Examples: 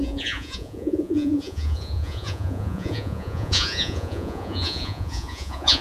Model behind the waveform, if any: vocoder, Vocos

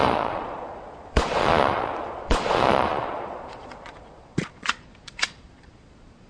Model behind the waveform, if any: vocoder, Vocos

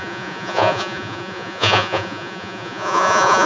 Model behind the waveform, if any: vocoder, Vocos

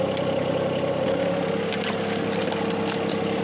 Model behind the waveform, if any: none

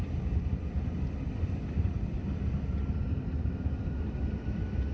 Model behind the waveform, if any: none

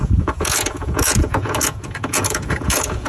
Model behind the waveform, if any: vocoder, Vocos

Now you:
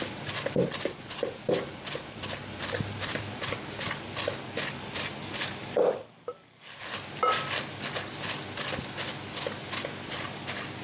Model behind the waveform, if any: none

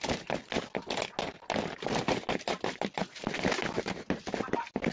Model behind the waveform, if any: none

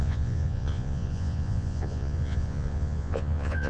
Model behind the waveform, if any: vocoder, Vocos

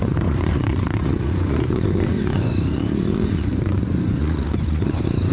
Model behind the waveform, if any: vocoder, Vocos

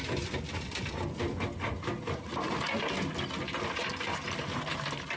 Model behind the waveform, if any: none